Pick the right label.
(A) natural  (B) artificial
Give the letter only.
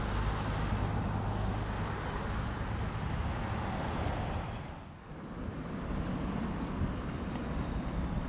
A